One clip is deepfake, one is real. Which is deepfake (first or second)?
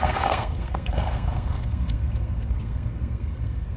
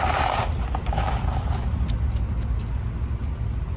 first